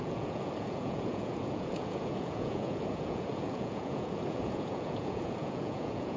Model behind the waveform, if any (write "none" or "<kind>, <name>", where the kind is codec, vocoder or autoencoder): vocoder, Vocos